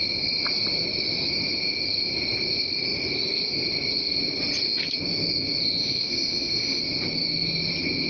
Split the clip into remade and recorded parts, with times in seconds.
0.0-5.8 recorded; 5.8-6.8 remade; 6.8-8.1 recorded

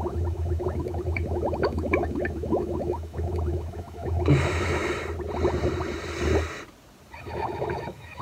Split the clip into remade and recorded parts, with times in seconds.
0.0-4.8 remade; 4.8-7.2 recorded; 7.2-8.2 remade

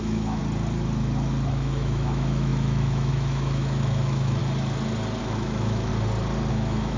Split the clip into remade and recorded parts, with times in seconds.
0.0-0.4 remade; 0.4-1.5 recorded; 1.5-4.4 remade; 4.4-5.2 recorded; 5.2-5.9 remade; 5.9-6.5 recorded; 6.5-7.0 remade

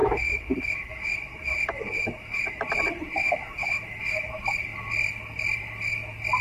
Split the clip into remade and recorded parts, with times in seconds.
0.0-2.6 remade; 2.6-3.2 recorded; 3.2-4.3 remade; 4.3-6.4 recorded

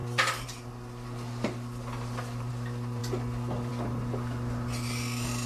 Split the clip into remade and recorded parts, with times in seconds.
0.0-5.5 recorded

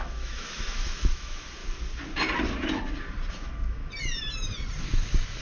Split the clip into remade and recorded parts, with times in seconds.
0.0-1.6 remade; 1.6-3.3 recorded; 3.3-3.8 remade; 3.8-4.8 recorded; 4.8-5.4 remade